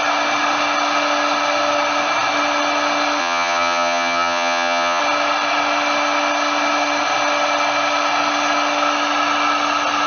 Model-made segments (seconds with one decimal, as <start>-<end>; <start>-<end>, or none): 3.2-5.0